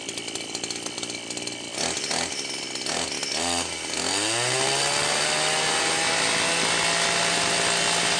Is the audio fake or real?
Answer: real